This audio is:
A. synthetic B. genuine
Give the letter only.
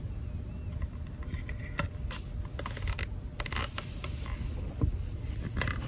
B